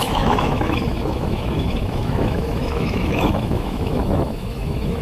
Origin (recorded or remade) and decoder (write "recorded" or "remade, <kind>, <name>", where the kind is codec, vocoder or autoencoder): remade, autoencoder, DAC-VAE